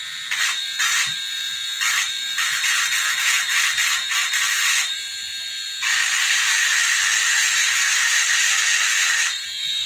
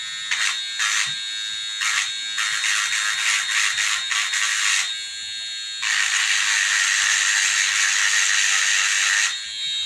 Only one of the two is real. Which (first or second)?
second